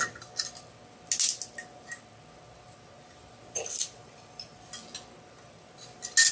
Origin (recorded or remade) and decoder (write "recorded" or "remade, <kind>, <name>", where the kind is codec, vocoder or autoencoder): recorded